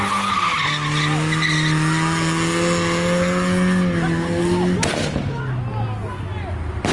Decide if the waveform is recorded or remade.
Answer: recorded